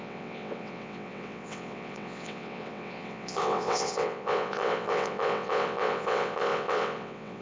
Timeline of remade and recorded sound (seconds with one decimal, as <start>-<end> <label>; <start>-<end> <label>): 0.0-7.4 remade